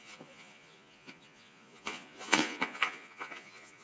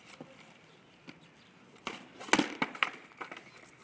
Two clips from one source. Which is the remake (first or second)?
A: first